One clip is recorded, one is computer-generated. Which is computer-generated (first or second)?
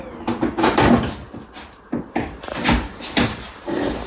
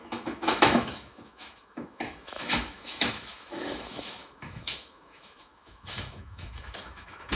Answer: second